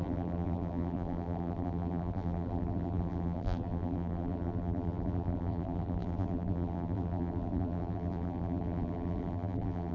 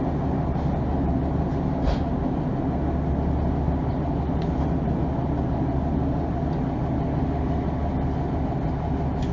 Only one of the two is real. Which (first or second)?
second